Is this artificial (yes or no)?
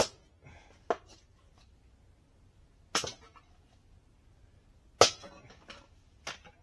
no